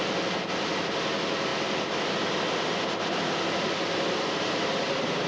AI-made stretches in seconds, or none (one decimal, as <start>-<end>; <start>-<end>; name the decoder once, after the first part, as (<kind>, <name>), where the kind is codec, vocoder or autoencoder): none